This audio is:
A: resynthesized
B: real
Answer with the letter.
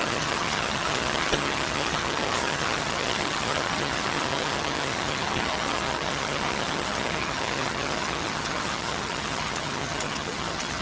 A